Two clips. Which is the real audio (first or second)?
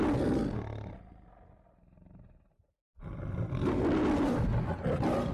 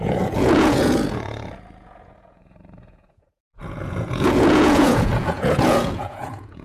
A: first